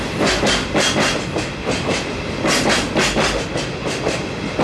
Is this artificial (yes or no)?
no